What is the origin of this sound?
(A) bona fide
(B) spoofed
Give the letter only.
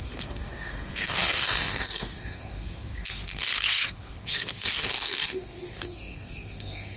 B